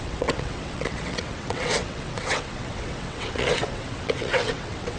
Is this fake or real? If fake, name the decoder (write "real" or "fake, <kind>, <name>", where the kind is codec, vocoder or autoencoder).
fake, vocoder, WaveNeXt